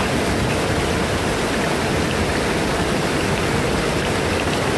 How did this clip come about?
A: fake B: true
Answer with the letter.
B